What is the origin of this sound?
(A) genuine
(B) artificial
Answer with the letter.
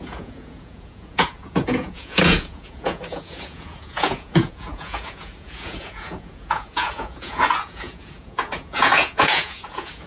B